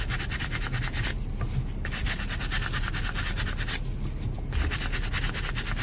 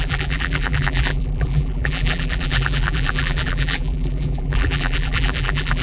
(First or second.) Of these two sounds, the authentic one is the first